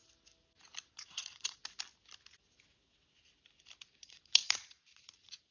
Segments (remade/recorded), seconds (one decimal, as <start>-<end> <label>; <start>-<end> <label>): 0.0-0.9 recorded; 0.9-1.6 remade; 1.6-4.0 recorded; 4.0-5.5 remade